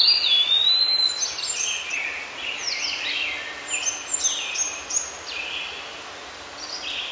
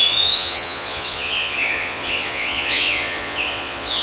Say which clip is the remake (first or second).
second